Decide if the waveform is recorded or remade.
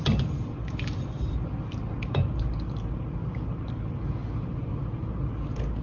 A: recorded